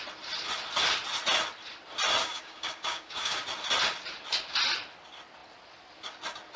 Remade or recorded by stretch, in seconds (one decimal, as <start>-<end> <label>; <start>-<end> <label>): 0.0-2.2 recorded; 2.2-3.4 remade; 3.4-6.6 recorded